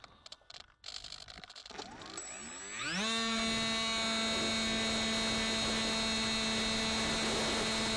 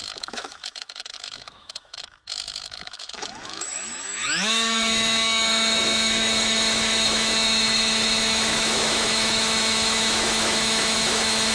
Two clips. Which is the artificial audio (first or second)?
second